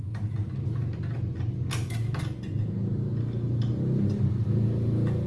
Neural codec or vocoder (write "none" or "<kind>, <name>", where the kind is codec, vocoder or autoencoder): none